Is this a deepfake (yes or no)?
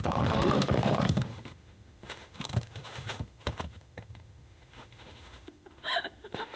yes